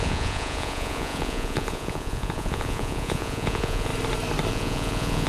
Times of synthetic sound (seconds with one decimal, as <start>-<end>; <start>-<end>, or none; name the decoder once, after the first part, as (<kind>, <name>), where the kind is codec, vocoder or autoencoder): 0.0-3.9 (vocoder, Vocos); 4.5-5.3